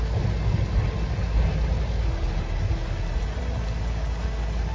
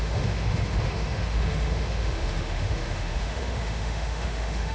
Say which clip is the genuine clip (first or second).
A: first